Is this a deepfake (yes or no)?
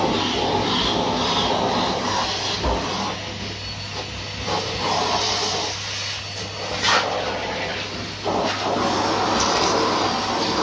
no